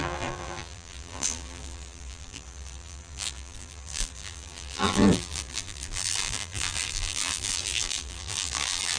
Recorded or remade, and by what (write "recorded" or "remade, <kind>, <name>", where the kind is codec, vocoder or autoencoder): remade, vocoder, BigVGAN v2